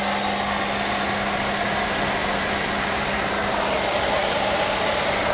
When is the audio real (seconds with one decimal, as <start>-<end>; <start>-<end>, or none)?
0.0-2.2; 3.5-4.2